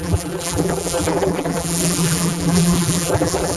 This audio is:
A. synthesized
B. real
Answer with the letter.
A